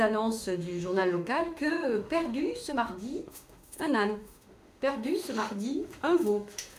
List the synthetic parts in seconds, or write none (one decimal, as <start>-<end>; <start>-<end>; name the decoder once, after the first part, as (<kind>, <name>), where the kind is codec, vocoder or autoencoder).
0.0-6.8 (autoencoder, DAC-VAE)